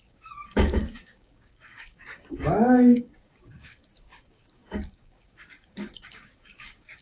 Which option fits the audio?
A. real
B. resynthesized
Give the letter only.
B